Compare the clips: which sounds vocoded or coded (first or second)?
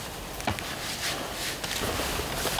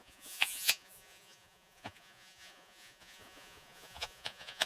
second